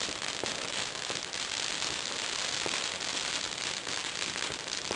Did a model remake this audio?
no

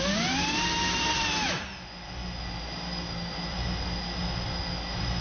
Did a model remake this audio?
no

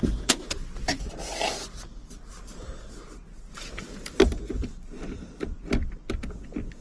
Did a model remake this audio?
no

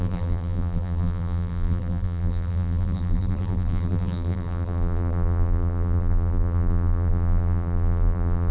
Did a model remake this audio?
yes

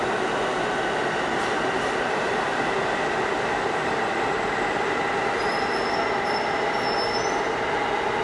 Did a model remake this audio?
no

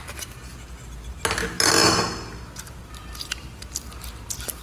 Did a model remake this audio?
no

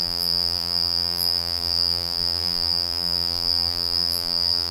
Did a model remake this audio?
yes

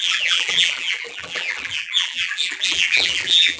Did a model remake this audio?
yes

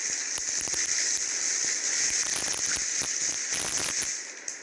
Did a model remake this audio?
no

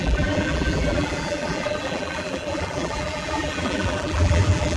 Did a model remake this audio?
yes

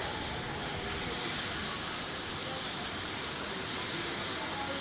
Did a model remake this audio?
no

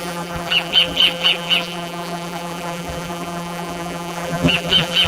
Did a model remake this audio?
yes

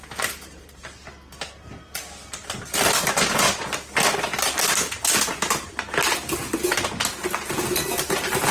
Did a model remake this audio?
no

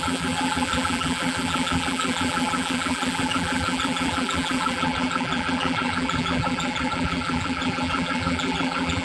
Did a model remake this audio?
yes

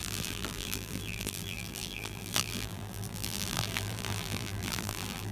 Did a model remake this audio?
yes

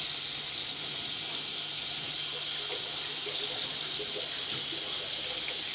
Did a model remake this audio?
no